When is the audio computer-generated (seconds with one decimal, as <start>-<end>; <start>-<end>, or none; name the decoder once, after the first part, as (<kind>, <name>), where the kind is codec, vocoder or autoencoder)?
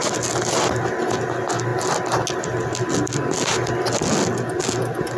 none